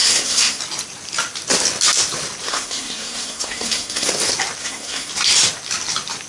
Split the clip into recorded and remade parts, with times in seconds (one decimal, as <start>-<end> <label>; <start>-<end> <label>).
0.0-0.6 remade; 0.6-2.5 recorded; 2.5-4.1 remade; 4.1-4.6 recorded; 4.6-5.1 remade; 5.1-6.3 recorded